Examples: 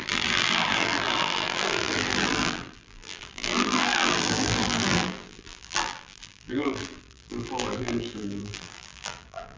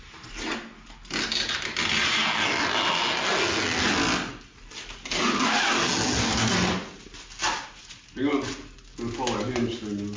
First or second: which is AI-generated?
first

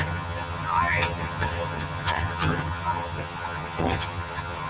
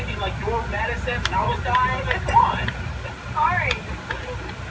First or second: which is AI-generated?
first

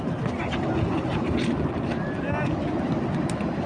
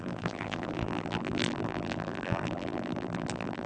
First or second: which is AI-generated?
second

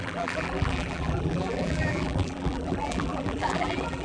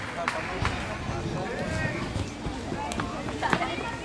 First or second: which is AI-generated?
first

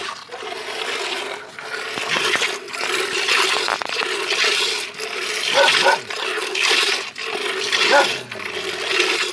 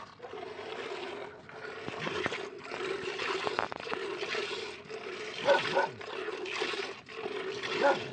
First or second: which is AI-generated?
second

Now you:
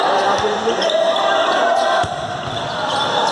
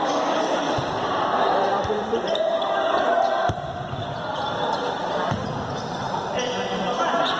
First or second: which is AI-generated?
second